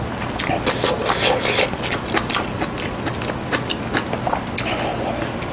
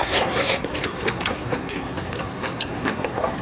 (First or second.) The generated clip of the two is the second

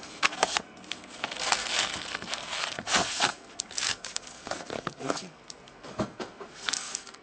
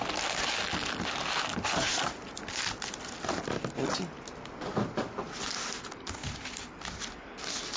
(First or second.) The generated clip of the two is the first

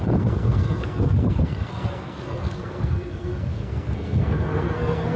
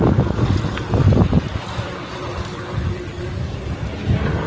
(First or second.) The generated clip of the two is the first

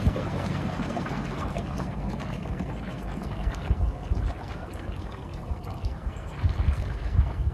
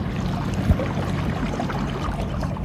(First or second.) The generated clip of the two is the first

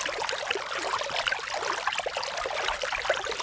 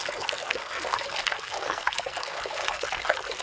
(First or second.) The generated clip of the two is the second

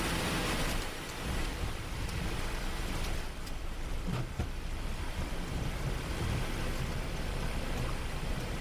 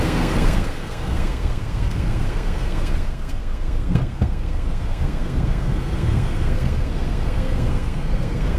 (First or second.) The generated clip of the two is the second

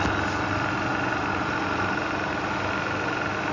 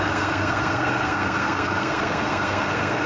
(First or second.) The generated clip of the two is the second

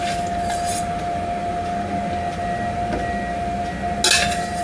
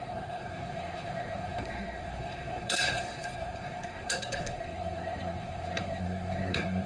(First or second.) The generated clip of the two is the second